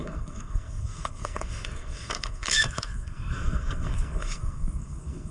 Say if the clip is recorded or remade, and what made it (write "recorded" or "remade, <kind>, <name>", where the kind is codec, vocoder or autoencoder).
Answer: remade, codec, SNAC